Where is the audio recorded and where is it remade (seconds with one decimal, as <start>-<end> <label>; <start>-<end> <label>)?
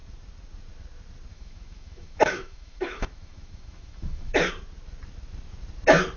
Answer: 0.0-1.3 recorded; 1.3-4.5 remade; 4.5-6.2 recorded